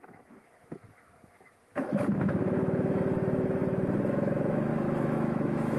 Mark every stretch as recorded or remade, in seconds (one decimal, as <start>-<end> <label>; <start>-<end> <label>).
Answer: 0.0-5.8 remade